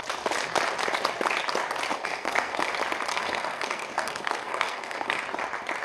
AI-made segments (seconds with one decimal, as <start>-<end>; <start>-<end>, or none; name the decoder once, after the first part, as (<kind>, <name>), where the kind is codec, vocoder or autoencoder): 1.9-2.7 (codec, SNAC); 3.1-5.2